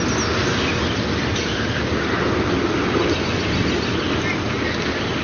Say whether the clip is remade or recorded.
recorded